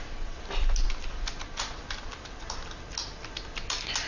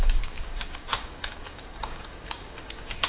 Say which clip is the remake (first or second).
second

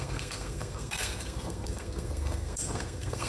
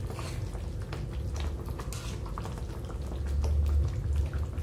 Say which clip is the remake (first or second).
first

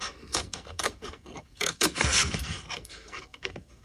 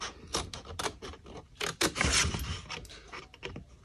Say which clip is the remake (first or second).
first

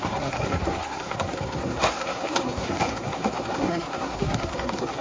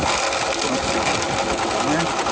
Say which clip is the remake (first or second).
first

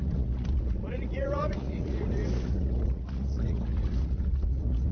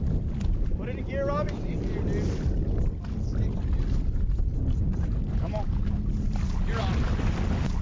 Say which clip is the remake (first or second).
first